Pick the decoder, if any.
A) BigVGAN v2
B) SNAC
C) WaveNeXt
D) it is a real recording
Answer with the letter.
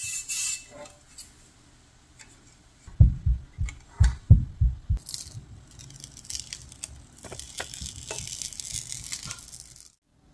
D